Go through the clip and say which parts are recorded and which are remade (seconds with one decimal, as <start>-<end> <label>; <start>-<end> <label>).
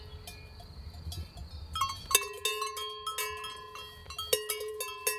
0.0-5.2 recorded